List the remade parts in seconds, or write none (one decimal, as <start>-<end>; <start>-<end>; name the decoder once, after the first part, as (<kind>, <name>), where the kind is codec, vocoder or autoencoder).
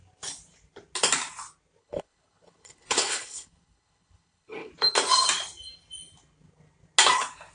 1.8-4.7 (codec, HILCodec)